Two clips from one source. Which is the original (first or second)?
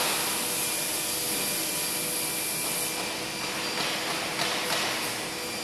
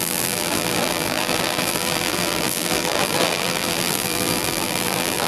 first